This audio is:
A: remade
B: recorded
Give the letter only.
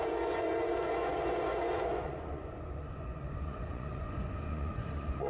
A